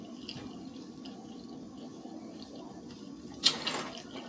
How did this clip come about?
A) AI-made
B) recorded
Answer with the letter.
B